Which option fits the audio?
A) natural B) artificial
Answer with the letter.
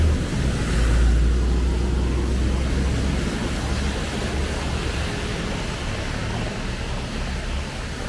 A